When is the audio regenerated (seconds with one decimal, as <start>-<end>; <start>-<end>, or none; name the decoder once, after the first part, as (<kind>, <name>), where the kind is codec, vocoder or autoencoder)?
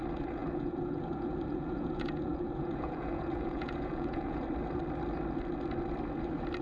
0.4-4.4 (vocoder, Vocos)